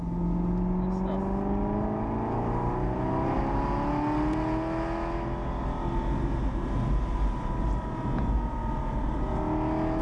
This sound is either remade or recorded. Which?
recorded